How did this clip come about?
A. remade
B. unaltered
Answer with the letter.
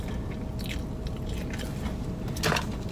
B